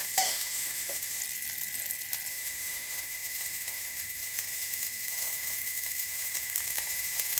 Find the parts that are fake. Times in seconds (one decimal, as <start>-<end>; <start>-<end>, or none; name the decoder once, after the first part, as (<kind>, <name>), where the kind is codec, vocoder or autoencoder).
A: 0.0-1.2 (autoencoder, DAC-VAE); 2.3-7.4